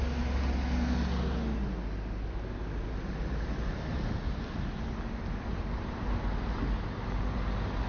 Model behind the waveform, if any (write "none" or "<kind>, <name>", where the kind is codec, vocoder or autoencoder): none